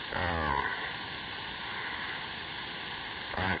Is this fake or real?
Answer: real